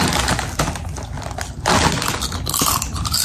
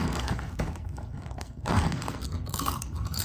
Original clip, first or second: first